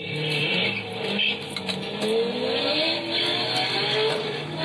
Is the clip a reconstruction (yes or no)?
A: no